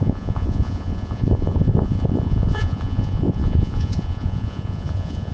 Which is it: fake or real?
fake